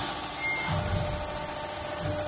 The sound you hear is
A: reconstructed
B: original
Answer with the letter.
B